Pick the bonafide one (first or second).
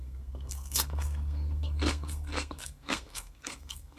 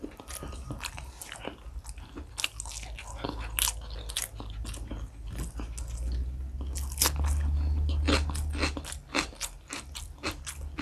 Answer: second